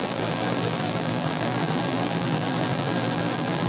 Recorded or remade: remade